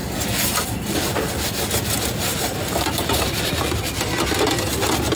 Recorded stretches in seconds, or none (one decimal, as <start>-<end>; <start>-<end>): 0.0-5.2